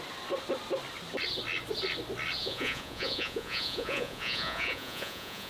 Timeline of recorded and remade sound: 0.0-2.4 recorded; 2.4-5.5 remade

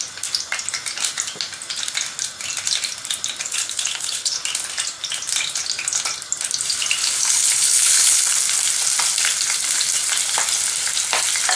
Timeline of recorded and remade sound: 0.0-3.4 recorded; 3.4-4.4 remade; 4.4-7.0 recorded; 7.0-8.2 remade; 8.2-11.6 recorded

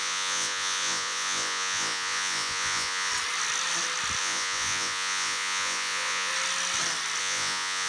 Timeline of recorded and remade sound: 0.0-3.1 remade; 3.1-4.2 recorded; 4.2-6.3 remade; 6.3-7.2 recorded; 7.2-7.9 remade

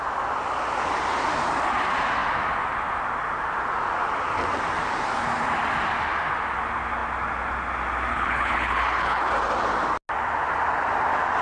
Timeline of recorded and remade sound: 0.0-8.1 recorded; 8.1-9.3 remade; 9.3-11.4 recorded

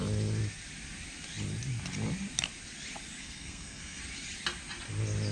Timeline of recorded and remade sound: 0.0-3.2 recorded; 3.2-4.0 remade; 4.0-5.3 recorded

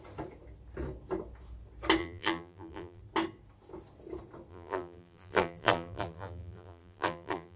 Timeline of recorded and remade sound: 0.0-2.0 recorded; 2.0-3.0 remade; 3.0-4.5 recorded; 4.5-7.6 remade